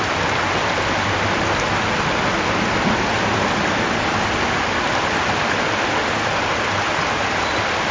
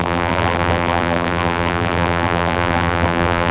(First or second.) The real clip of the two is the first